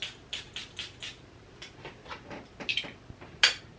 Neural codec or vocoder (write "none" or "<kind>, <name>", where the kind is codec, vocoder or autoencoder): none